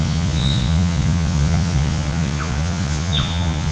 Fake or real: fake